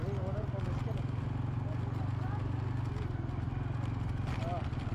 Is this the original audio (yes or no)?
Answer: yes